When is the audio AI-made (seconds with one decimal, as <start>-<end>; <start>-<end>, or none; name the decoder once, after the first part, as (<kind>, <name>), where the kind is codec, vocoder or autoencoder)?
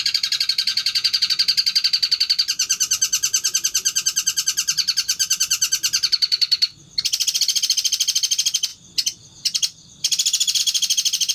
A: 0.7-1.3 (vocoder, Vocos)